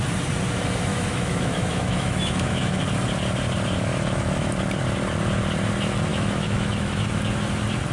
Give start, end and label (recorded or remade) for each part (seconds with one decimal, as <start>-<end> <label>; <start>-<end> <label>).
0.0-0.9 recorded; 0.9-2.8 remade; 2.8-3.9 recorded; 3.9-4.5 remade; 4.5-6.1 recorded; 6.1-7.2 remade; 7.2-7.9 recorded